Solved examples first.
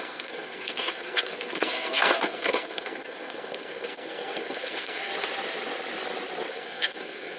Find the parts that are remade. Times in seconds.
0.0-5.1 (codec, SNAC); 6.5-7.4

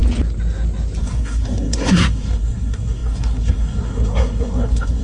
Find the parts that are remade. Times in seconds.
1.0-5.0 (codec, SNAC)